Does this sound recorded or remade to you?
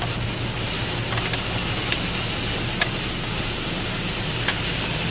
recorded